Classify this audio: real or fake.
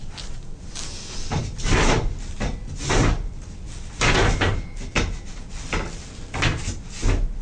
real